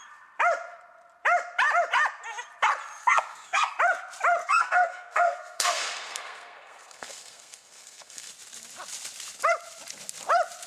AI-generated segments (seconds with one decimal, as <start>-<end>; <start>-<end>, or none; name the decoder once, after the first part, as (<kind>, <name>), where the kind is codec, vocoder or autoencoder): 3.0-3.7 (codec, SNAC); 4.4-8.3